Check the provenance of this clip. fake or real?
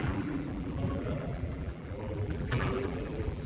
fake